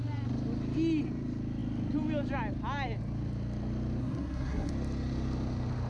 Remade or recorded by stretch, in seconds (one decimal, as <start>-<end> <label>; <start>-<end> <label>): 0.0-4.0 recorded; 4.0-4.7 remade; 4.7-5.9 recorded

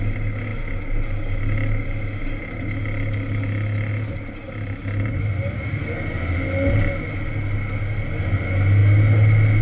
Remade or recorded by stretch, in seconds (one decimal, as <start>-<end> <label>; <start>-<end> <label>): 0.0-9.6 recorded

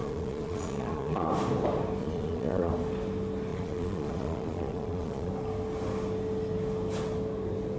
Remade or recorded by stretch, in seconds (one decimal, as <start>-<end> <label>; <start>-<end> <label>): 0.0-1.3 remade; 1.3-2.0 recorded; 2.0-2.7 remade; 2.7-3.5 recorded; 3.5-5.3 remade; 5.3-7.8 recorded

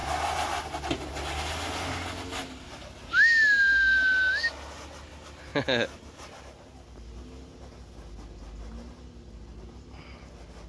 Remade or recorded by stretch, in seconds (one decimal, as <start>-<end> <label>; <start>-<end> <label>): 0.0-10.7 recorded

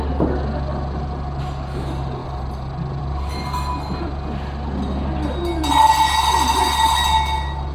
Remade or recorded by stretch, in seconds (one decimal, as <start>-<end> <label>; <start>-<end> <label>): 0.0-7.7 recorded

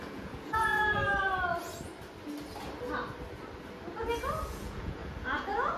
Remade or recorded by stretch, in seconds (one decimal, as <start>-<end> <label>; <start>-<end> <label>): 0.0-1.0 remade; 1.0-4.5 recorded; 4.5-5.8 remade